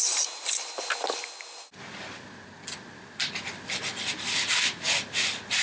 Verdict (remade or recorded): recorded